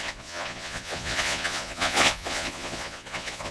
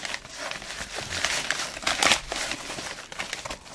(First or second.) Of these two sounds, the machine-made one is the first